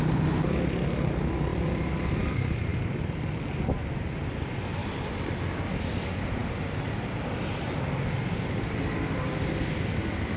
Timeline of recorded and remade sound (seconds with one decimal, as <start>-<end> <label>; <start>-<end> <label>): 0.0-1.5 recorded; 1.5-2.2 remade; 2.2-4.8 recorded; 4.8-5.6 remade; 5.6-6.4 recorded; 6.4-8.8 remade; 8.8-10.4 recorded